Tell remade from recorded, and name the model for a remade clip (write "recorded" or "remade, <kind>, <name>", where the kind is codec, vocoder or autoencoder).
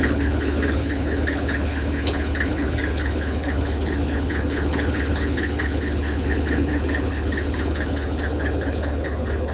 remade, codec, HILCodec